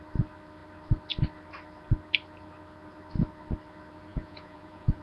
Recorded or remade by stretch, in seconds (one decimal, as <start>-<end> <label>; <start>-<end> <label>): 0.0-4.1 recorded; 4.1-5.0 remade